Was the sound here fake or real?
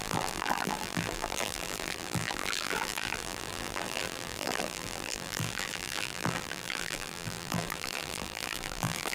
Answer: fake